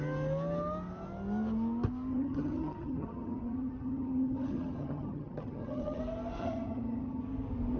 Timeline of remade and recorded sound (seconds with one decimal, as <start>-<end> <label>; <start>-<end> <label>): 0.0-2.1 recorded; 2.1-6.0 remade; 6.0-6.4 recorded; 6.4-7.2 remade; 7.2-7.8 recorded